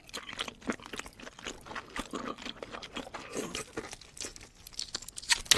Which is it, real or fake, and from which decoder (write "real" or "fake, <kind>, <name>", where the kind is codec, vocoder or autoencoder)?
real